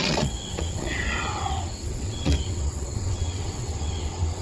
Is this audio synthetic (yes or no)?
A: yes